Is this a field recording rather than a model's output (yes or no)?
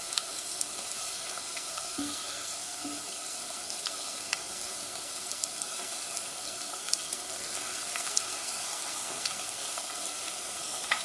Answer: no